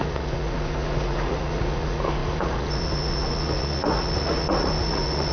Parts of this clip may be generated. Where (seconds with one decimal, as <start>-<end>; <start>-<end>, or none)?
0.0-5.3